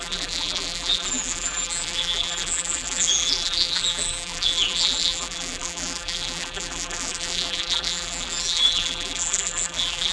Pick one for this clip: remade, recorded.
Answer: remade